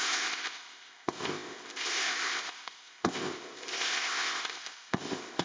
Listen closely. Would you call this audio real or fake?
fake